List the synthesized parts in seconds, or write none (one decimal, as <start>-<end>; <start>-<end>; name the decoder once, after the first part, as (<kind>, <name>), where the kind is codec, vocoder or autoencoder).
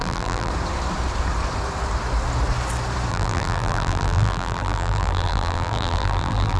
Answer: 0.0-0.5 (vocoder, BigVGAN v2); 3.1-6.6